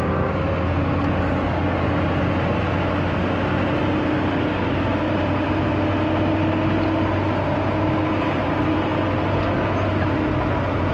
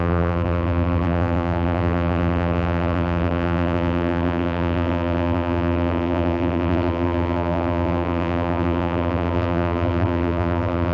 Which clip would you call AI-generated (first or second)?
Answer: second